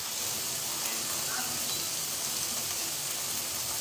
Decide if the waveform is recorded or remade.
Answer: recorded